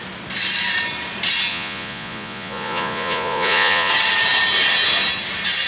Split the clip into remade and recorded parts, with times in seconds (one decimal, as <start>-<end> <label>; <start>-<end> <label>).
0.0-1.5 recorded; 1.5-3.9 remade; 3.9-5.7 recorded